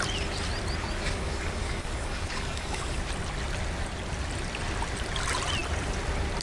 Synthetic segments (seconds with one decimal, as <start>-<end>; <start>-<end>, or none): 0.8-3.0